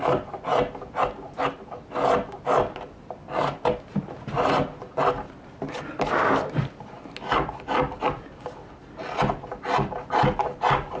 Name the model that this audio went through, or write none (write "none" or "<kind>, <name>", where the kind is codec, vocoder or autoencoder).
none